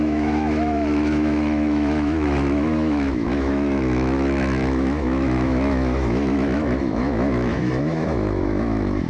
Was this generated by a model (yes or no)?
yes